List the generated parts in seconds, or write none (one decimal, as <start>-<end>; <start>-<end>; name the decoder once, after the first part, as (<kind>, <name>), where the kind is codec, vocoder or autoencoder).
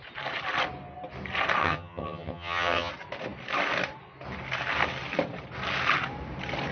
1.6-2.9 (vocoder, HiFi-GAN)